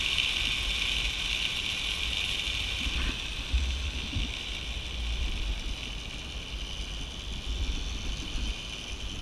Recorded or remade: recorded